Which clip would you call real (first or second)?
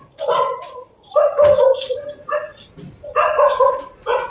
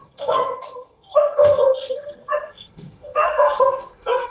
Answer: first